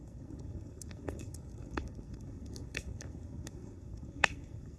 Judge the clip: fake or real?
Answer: fake